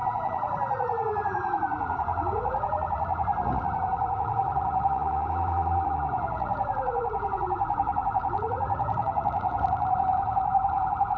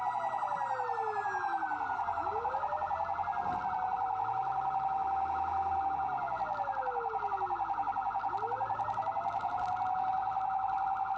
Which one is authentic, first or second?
second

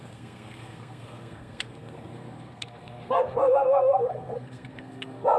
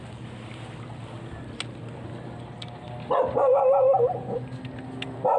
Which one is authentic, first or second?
second